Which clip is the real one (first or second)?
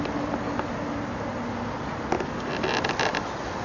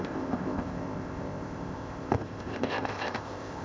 first